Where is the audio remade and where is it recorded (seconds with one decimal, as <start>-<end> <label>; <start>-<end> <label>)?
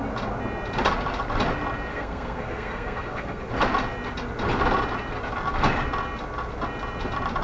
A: 0.0-1.9 recorded; 1.9-3.5 remade; 3.5-7.4 recorded